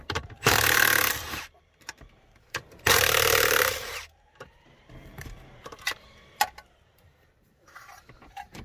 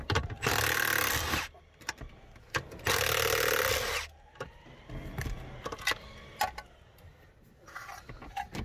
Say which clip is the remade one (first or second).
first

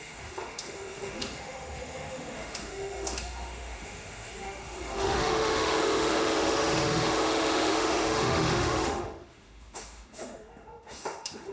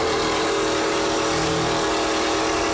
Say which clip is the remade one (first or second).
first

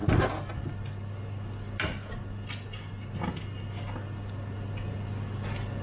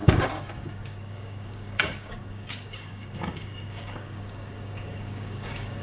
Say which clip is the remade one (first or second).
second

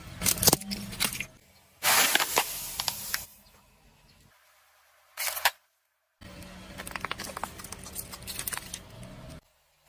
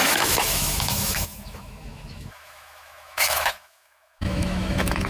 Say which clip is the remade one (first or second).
second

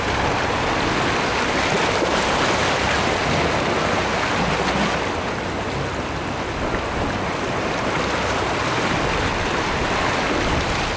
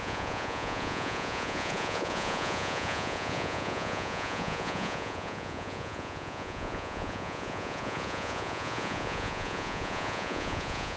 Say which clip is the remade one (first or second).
second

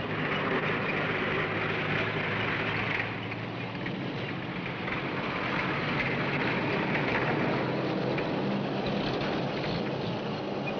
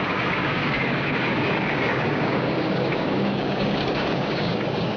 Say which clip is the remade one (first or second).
second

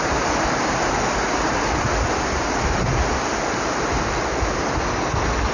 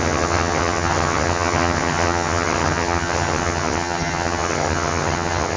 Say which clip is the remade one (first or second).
second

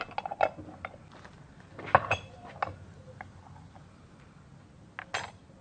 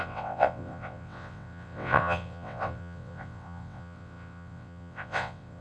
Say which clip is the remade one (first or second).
second